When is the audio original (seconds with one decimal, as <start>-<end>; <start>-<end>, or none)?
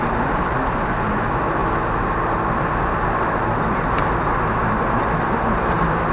0.0-6.1